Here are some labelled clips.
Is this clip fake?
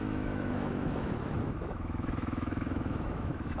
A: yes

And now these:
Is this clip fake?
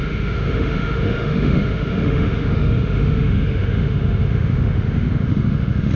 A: yes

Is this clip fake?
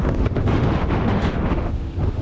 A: yes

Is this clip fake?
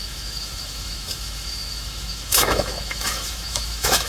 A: yes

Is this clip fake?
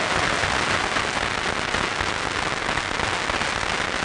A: no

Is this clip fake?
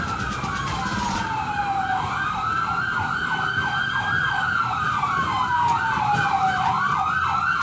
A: no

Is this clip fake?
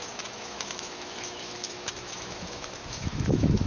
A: yes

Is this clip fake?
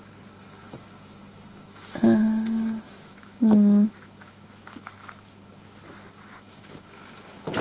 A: yes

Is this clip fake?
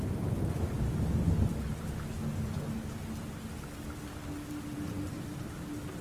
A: no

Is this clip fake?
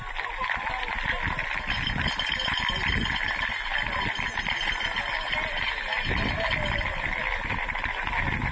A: no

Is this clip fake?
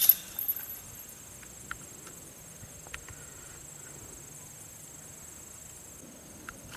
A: no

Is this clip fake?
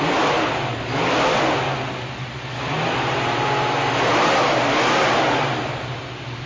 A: no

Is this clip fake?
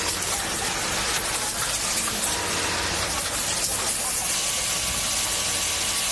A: no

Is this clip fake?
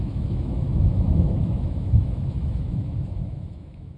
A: yes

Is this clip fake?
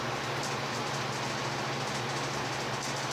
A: no